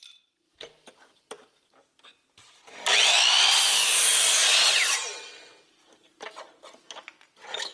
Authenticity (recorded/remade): recorded